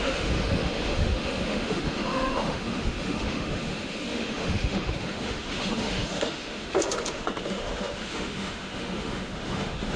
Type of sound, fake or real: fake